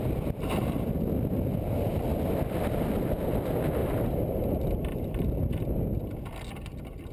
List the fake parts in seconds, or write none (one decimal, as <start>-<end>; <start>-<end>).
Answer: 3.8-6.0